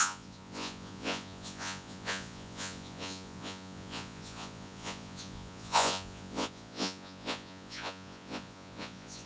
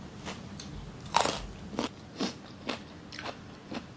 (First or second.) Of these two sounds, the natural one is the second